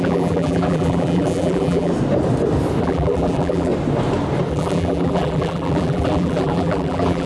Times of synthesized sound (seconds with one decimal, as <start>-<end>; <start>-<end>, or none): 0.0-1.9; 2.8-3.7; 4.5-7.3